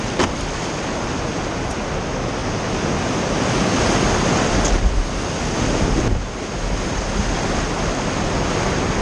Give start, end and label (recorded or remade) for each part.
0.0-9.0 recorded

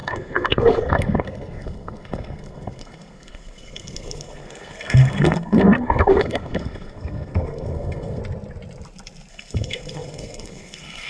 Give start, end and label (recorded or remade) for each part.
0.0-8.2 remade; 8.2-9.3 recorded; 9.3-11.1 remade

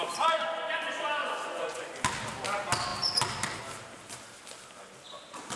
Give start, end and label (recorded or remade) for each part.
0.0-1.2 recorded; 1.2-1.9 remade; 1.9-5.6 recorded